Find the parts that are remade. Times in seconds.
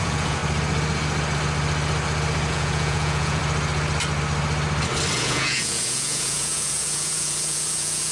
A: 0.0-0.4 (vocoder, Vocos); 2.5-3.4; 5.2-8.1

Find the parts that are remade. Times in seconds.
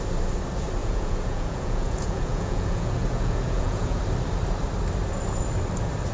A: 0.8-4.0 (vocoder, Vocos)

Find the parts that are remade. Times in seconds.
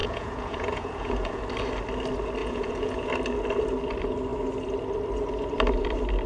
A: 0.0-1.4 (vocoder, Vocos); 2.4-3.1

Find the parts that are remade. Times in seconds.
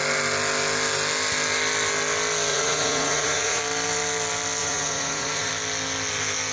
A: 2.5-3.6 (vocoder, Vocos); 4.6-5.5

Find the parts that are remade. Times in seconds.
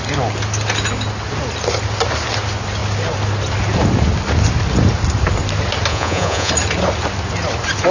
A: 5.9-6.5 (vocoder, Vocos)